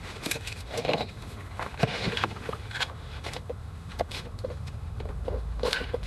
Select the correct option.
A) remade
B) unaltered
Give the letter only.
A